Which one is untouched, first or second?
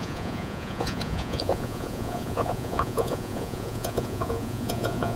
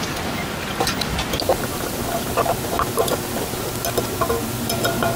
second